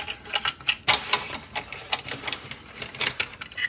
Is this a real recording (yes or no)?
yes